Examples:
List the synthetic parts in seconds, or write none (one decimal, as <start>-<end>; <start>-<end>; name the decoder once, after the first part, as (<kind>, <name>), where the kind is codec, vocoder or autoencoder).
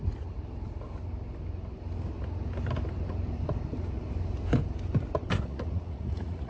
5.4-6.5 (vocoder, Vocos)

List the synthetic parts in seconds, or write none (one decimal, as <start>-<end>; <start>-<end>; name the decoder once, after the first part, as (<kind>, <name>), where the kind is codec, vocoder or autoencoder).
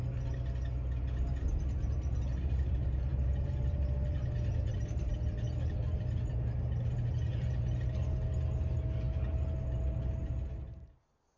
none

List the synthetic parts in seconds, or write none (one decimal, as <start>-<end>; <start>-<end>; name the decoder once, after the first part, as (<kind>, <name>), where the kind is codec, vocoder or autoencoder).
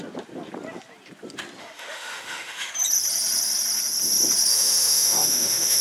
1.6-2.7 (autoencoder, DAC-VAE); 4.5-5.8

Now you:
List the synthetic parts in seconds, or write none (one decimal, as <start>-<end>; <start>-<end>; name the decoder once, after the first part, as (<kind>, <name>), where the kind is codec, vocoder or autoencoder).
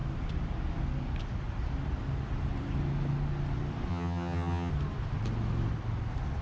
3.9-4.7 (vocoder, HiFi-GAN)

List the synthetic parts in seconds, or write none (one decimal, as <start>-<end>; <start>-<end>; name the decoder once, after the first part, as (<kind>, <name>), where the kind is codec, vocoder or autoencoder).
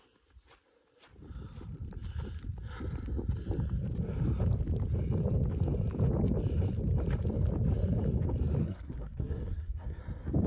8.6-10.0 (codec, SNAC)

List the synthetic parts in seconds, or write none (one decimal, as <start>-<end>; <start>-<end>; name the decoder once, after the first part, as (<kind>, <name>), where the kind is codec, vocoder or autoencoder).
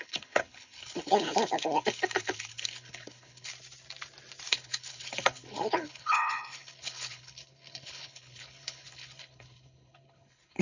0.0-3.5 (codec, HILCodec); 4.5-10.6